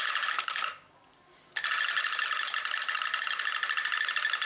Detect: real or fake real